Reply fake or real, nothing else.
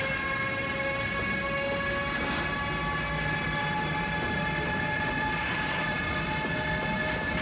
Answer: real